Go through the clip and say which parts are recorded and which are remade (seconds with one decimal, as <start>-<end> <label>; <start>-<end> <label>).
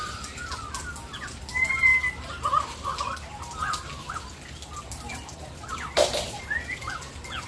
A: 0.0-7.5 recorded